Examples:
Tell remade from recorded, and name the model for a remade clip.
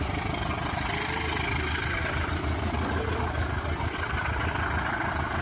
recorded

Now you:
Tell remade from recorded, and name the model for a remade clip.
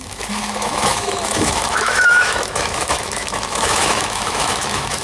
remade, autoencoder, DAC-VAE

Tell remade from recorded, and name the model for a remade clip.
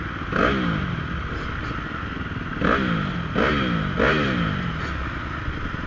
recorded